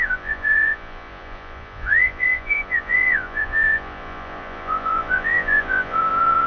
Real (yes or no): no